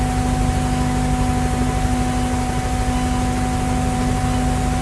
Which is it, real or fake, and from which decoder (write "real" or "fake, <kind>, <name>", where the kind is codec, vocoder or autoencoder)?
real